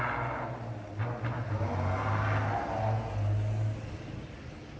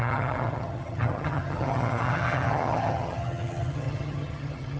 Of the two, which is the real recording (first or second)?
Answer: first